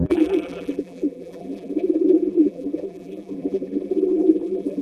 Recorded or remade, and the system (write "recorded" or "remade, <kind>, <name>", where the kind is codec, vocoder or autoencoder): remade, vocoder, BigVGAN v2